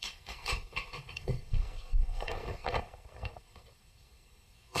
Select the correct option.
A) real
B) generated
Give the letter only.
B